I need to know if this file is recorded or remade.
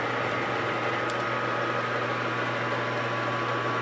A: recorded